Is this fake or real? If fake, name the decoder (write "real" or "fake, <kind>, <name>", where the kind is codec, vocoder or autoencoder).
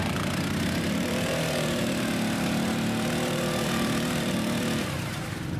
fake, vocoder, BigVGAN v2